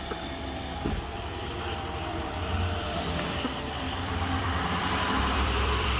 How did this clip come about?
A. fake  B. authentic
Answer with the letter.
A